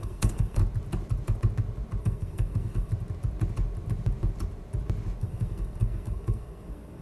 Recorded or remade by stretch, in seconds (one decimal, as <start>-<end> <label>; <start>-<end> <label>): 0.0-0.6 remade; 0.6-2.0 recorded; 2.0-2.9 remade; 2.9-5.2 recorded; 5.2-7.0 remade